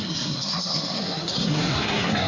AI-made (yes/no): yes